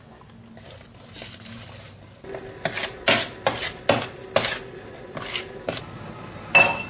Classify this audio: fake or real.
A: real